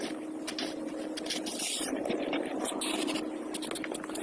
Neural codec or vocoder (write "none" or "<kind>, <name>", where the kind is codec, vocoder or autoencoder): none